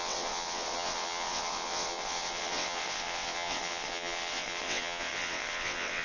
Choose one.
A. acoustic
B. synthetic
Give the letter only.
B